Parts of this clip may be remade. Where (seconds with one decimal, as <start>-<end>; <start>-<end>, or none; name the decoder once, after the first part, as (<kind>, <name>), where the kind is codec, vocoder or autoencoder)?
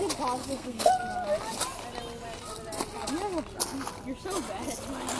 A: 0.4-0.9 (codec, SNAC)